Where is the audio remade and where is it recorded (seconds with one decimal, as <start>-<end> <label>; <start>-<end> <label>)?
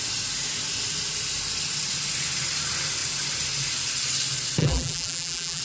0.0-4.6 recorded; 4.6-5.6 remade